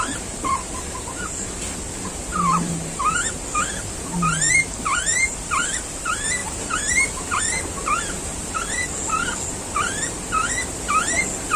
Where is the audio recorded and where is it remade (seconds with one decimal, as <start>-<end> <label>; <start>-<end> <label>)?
0.0-2.3 recorded; 2.3-3.0 remade; 3.0-6.4 recorded; 6.4-7.4 remade; 7.4-8.3 recorded; 8.3-8.9 remade; 8.9-11.6 recorded